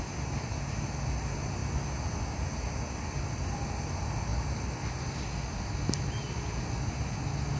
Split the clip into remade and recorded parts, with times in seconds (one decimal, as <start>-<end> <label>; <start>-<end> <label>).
0.0-7.6 recorded